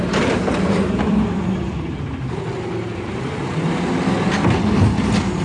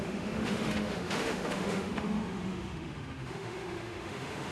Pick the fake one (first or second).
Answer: second